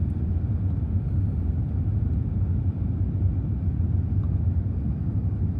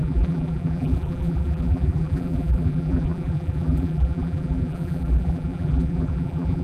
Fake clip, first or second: second